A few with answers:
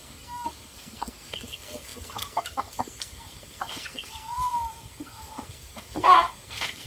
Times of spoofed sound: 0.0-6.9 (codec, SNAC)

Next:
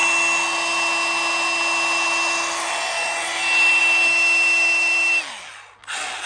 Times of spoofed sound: none